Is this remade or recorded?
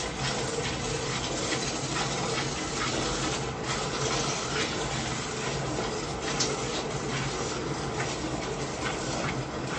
recorded